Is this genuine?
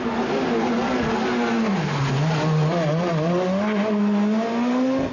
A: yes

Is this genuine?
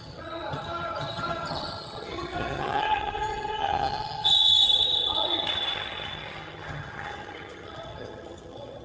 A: no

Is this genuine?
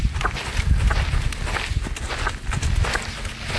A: yes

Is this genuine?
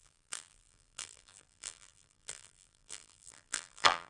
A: no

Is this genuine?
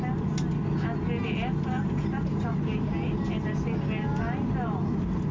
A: yes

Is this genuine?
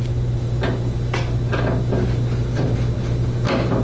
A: yes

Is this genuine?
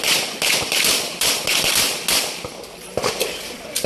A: yes